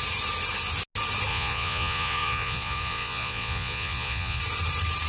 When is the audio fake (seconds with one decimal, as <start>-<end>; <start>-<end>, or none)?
1.3-4.4